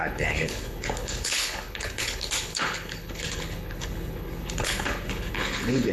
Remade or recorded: remade